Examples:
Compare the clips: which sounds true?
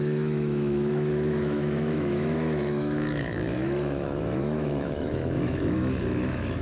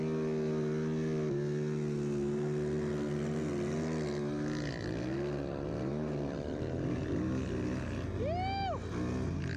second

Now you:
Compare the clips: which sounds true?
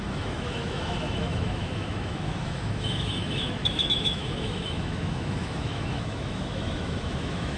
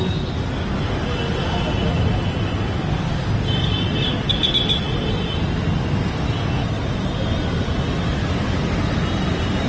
second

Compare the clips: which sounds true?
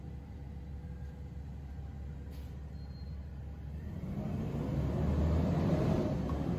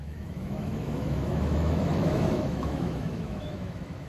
first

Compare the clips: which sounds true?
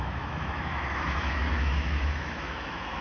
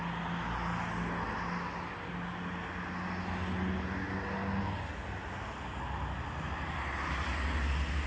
second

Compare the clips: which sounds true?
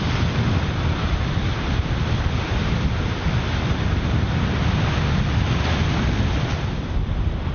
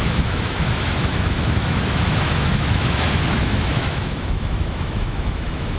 first